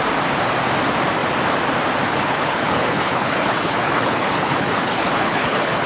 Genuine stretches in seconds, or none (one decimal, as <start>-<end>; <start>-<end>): 0.0-2.1